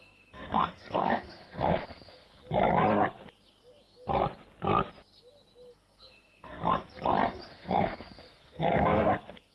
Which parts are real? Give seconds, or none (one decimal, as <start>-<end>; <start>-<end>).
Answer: 2.4-5.7; 6.6-7.5